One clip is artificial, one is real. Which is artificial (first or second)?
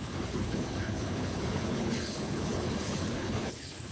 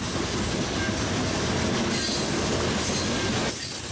first